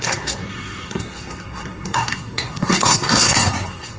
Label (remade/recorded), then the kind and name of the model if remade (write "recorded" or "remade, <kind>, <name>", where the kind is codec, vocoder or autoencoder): remade, codec, SNAC